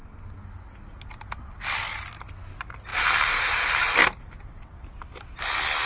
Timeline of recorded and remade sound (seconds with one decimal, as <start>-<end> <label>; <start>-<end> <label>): 0.0-2.9 recorded; 2.9-4.9 remade; 4.9-5.9 recorded